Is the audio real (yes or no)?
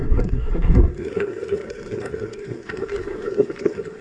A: no